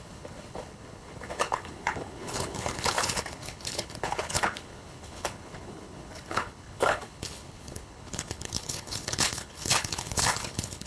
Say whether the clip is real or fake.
fake